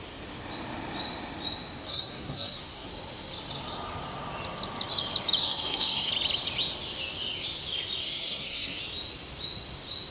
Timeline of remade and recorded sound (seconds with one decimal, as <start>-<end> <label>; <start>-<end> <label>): 0.0-1.9 recorded; 1.9-2.9 remade; 2.9-5.4 recorded; 5.4-6.1 remade; 6.1-8.0 recorded; 8.0-8.8 remade; 8.8-10.1 recorded